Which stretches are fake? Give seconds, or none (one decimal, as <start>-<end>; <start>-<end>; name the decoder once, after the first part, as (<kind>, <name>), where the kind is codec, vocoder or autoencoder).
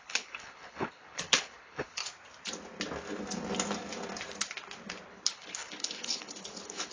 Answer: 0.0-2.0 (codec, HILCodec); 5.1-6.9